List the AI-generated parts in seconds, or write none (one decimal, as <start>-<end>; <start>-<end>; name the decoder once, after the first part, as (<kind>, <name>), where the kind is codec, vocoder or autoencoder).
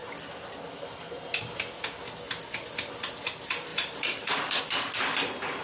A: 3.7-4.6 (vocoder, BigVGAN v2)